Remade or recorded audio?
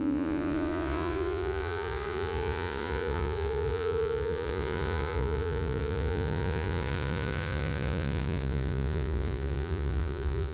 remade